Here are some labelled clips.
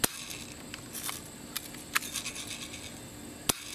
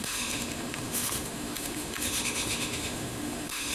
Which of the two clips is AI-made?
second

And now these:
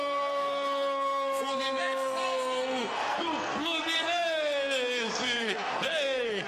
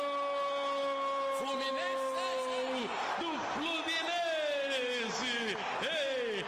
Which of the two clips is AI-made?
first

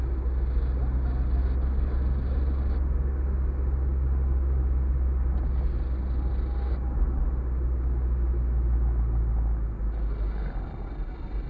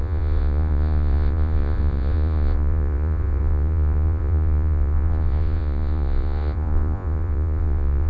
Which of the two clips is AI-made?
second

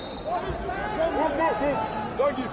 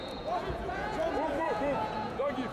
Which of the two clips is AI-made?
second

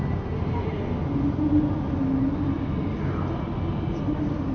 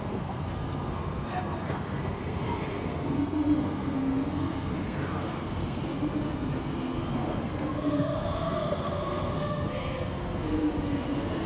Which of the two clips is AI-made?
second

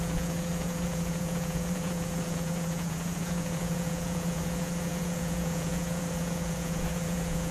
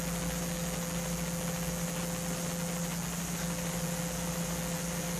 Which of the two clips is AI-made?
first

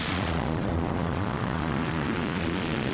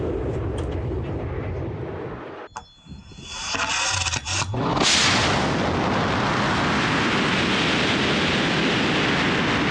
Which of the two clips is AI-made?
first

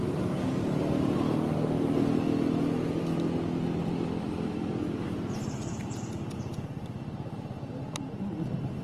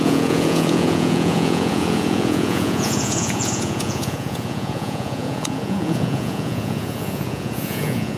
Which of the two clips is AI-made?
second